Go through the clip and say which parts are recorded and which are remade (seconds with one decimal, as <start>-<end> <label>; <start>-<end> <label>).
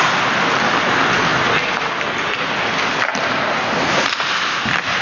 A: 0.0-5.0 recorded